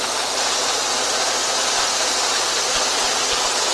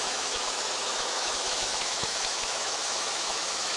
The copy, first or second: second